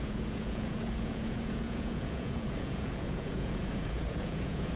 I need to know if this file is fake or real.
fake